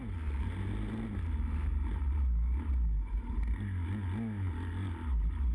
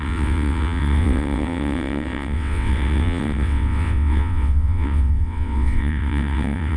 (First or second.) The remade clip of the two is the second